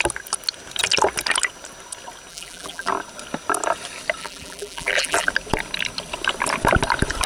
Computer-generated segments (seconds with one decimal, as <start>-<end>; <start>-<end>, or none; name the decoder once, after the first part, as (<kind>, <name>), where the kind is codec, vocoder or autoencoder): 2.3-2.9 (vocoder, BigVGAN v2); 4.2-5.3